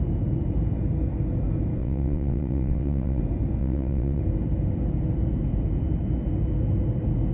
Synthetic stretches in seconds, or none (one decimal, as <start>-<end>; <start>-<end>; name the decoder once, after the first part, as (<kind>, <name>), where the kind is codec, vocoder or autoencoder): 1.8-3.2 (vocoder, WaveNeXt); 3.6-4.2